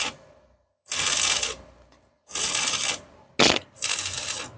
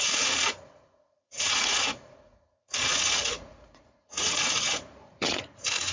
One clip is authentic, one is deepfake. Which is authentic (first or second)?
first